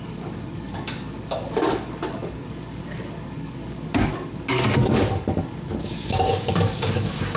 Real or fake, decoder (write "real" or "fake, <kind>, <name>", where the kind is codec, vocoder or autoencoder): fake, codec, DAC